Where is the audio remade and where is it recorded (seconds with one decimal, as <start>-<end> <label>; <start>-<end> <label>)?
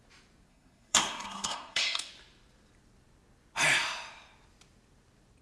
0.0-0.5 recorded; 0.5-2.1 remade; 2.1-5.4 recorded